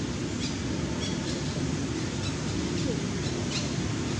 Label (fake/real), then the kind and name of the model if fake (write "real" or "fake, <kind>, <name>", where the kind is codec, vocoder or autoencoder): real